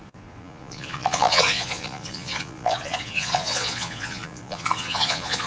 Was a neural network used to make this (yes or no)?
yes